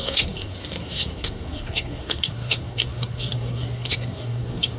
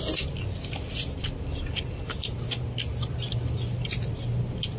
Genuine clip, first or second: second